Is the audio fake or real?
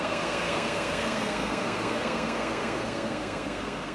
fake